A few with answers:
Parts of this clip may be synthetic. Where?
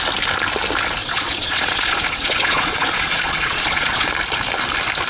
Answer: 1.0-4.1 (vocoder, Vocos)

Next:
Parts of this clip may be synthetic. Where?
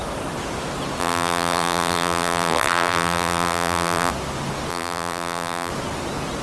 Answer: 1.0-4.1 (vocoder, BigVGAN v2); 4.7-5.7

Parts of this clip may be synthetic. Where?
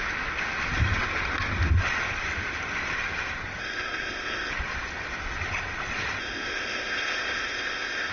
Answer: 3.6-4.5 (codec, ZipCodec); 6.2-8.1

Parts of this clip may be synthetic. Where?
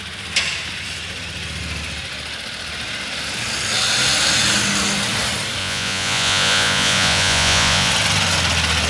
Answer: 5.6-7.9 (vocoder, Vocos)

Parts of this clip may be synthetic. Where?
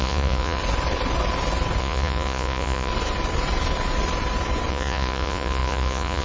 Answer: 0.0-0.6 (vocoder, Vocos); 1.8-2.9; 4.7-6.2